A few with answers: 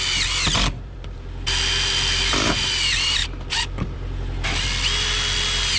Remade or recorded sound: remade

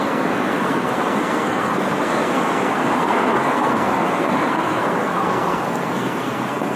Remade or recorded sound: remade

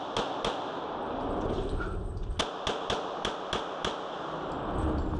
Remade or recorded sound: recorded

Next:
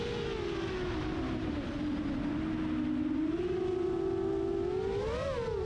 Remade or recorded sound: recorded